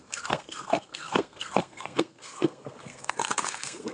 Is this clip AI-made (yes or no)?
yes